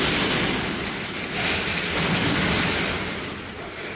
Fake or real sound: real